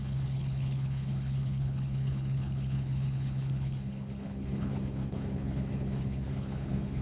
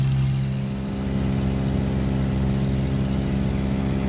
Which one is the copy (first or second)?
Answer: first